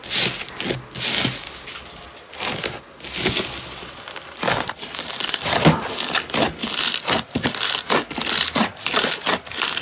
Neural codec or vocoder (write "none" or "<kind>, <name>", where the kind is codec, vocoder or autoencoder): none